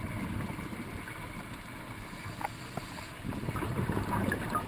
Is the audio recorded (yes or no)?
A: yes